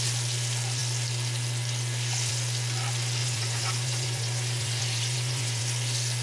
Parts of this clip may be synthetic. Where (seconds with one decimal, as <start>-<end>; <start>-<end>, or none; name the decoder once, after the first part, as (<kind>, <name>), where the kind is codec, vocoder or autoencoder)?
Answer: 3.2-5.6 (vocoder, Vocos)

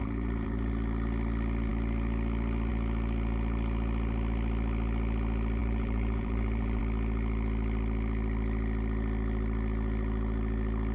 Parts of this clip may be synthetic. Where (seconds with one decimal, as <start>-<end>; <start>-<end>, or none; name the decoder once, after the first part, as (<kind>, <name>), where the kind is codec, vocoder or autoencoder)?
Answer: 0.0-0.7 (vocoder, BigVGAN v2); 5.6-6.8

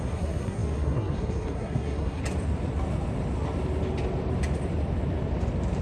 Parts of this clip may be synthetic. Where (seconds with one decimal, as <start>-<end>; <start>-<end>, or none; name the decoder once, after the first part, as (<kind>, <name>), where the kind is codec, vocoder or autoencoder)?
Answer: 0.0-2.2 (codec, SNAC)

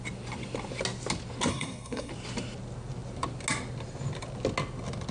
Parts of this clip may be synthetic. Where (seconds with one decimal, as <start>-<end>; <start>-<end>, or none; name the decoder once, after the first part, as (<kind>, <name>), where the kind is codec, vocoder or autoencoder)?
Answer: 1.5-2.1 (codec, SNAC)